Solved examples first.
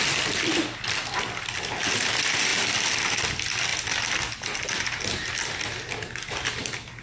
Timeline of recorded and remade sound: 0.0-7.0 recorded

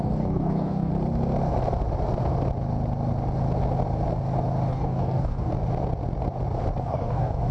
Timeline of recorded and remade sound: 0.0-0.9 remade; 0.9-4.7 recorded; 4.7-5.5 remade; 5.5-6.8 recorded; 6.8-7.5 remade

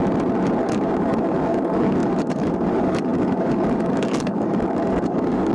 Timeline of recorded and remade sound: 0.0-0.6 recorded; 0.6-5.5 remade

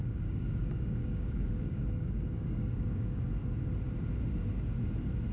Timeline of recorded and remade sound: 0.0-3.2 remade; 3.2-5.3 recorded

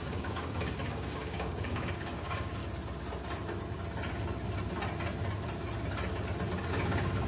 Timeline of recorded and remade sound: 0.0-2.6 remade; 2.6-6.7 recorded; 6.7-7.3 remade